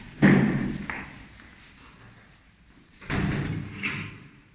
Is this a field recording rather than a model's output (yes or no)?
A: yes